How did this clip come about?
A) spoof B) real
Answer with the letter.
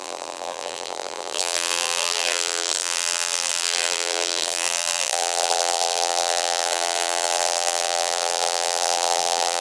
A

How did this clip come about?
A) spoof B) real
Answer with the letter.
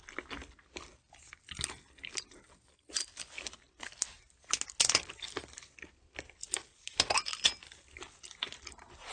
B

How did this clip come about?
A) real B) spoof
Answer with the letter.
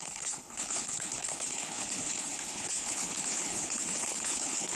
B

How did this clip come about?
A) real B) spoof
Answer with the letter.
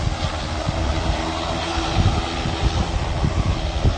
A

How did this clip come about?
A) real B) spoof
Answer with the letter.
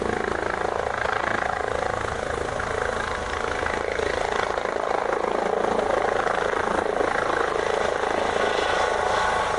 A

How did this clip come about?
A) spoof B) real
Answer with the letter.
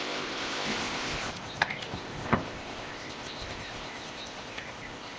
A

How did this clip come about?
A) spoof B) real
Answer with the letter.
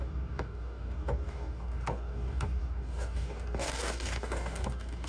A